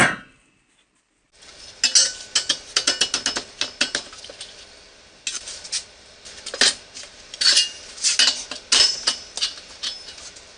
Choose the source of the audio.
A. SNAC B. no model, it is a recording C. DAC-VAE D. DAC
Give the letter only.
B